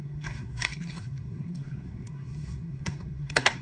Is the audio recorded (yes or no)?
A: no